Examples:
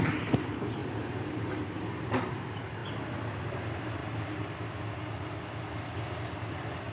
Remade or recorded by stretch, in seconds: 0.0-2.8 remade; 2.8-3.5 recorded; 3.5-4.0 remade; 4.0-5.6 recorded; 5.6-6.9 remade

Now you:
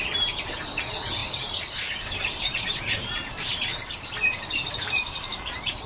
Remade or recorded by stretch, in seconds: 0.0-3.5 remade; 3.5-4.7 recorded; 4.7-5.9 remade

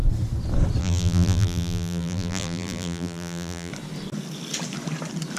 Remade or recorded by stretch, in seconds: 0.0-0.8 recorded; 0.8-3.7 remade; 3.7-5.4 recorded

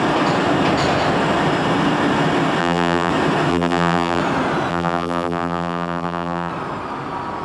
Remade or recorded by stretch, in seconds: 0.0-2.6 recorded; 2.6-3.1 remade; 3.1-3.5 recorded; 3.5-4.2 remade; 4.2-4.7 recorded; 4.7-6.5 remade; 6.5-7.4 recorded

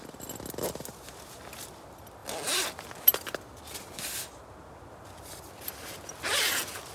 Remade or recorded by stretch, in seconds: 0.0-6.9 recorded

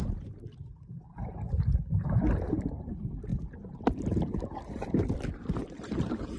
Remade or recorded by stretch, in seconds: 0.0-5.6 recorded; 5.6-6.4 remade

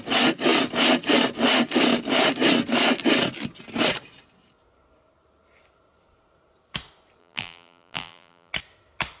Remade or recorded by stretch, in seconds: 0.0-7.2 recorded; 7.2-8.5 remade; 8.5-9.2 recorded

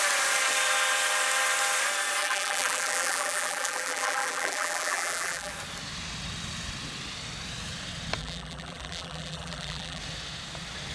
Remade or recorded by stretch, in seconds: 0.0-2.2 recorded; 2.2-5.5 remade; 5.5-8.2 recorded; 8.2-10.0 remade; 10.0-10.9 recorded